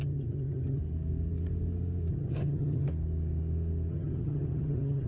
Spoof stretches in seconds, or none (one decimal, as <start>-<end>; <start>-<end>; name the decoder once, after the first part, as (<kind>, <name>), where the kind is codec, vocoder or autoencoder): 0.0-0.8 (vocoder, HiFi-GAN); 2.1-2.9; 3.9-5.1